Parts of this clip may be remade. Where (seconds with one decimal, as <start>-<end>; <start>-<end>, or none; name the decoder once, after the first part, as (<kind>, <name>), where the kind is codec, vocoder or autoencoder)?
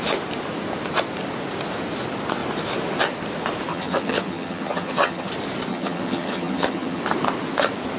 3.7-5.3 (vocoder, HiFi-GAN); 5.7-7.0